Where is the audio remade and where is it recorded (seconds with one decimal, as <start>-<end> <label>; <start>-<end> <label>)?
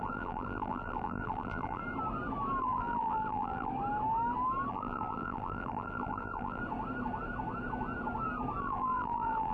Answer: 0.0-1.8 remade; 1.8-2.6 recorded; 2.6-3.7 remade; 3.7-4.7 recorded; 4.7-6.6 remade; 6.6-8.6 recorded; 8.6-9.5 remade